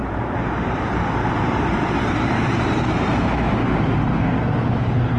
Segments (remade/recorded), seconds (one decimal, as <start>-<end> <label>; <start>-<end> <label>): 0.0-1.4 recorded; 1.4-3.6 remade; 3.6-4.7 recorded; 4.7-5.2 remade